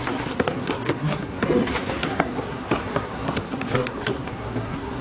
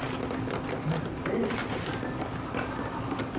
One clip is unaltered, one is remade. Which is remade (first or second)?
first